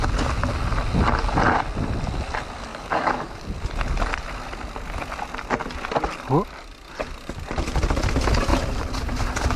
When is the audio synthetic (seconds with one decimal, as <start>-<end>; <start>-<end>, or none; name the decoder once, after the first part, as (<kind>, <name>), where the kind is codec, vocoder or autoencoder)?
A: 2.7-3.4 (codec, DAC)